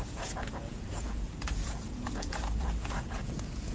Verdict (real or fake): fake